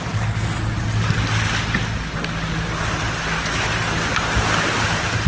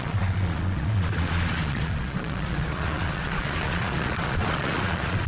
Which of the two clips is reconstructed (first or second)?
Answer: second